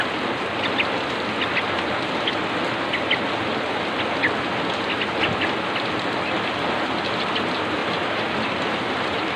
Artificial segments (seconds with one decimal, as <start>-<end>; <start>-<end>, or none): 7.8-9.4